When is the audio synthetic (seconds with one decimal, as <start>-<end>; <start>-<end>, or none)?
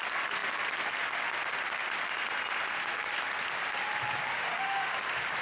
4.3-4.9